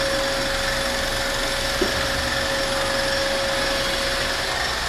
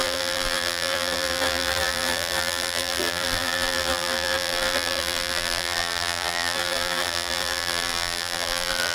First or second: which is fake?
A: second